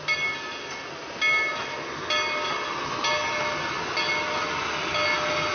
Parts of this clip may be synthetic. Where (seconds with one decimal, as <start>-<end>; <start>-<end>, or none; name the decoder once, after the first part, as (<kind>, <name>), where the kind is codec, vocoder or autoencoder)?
none